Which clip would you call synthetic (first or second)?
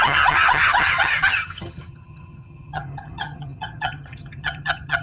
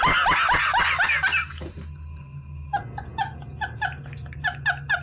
first